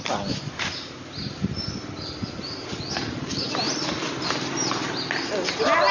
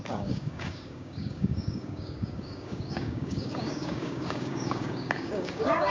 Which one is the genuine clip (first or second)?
first